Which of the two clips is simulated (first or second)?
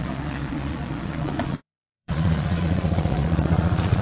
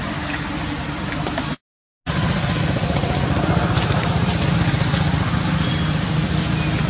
first